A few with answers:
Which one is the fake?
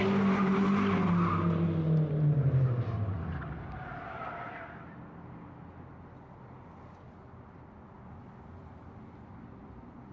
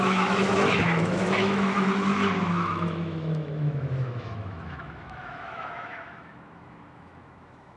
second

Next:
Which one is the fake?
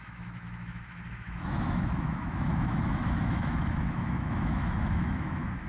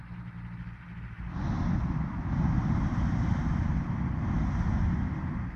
first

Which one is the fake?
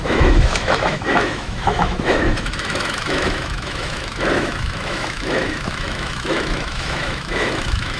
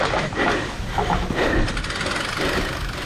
first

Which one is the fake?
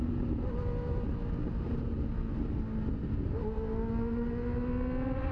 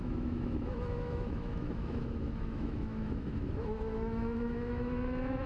second